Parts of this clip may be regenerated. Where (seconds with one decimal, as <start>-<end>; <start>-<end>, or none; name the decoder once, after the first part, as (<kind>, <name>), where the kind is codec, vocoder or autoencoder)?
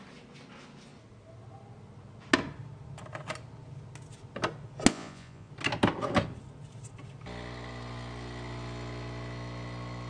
4.9-5.5 (vocoder, Vocos)